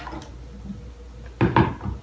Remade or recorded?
recorded